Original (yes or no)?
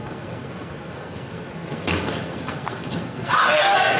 no